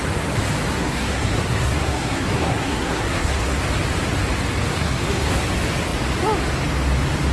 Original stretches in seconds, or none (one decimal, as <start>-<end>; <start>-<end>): 0.0-0.7; 3.6-4.7; 5.4-7.3